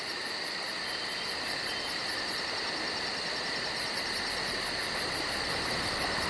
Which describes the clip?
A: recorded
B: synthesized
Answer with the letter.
A